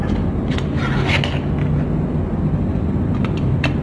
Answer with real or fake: real